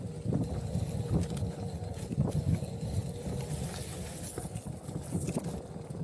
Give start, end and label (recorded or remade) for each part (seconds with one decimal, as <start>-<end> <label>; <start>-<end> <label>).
0.0-6.0 recorded